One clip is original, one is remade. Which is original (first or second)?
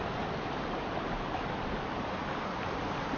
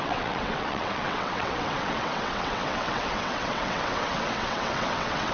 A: first